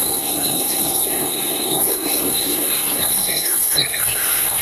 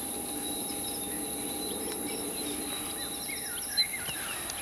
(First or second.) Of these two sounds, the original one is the second